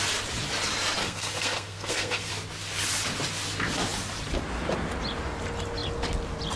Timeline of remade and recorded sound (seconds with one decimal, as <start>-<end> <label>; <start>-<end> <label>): 0.0-1.0 recorded; 1.0-2.3 remade; 2.3-6.6 recorded